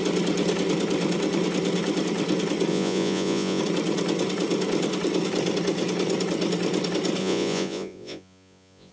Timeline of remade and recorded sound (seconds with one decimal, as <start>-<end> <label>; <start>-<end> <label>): 0.0-2.7 recorded; 2.7-3.6 remade; 3.6-7.2 recorded; 7.2-8.9 remade